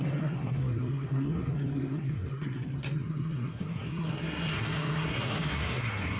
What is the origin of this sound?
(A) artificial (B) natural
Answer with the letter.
A